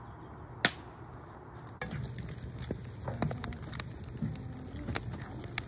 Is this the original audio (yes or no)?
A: yes